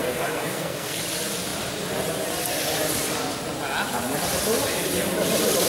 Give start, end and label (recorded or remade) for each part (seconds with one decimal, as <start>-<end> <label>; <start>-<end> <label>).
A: 0.0-1.0 remade; 1.0-5.7 recorded